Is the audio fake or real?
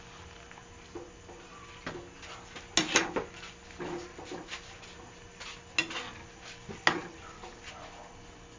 real